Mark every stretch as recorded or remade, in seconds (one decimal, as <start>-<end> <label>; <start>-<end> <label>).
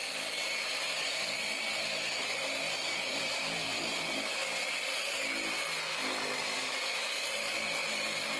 0.0-2.8 recorded; 2.8-3.8 remade; 3.8-8.4 recorded